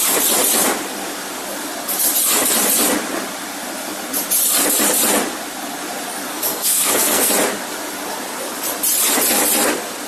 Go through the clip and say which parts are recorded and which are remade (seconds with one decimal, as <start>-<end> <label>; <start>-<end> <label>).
0.0-6.3 recorded; 6.3-7.3 remade; 7.3-10.1 recorded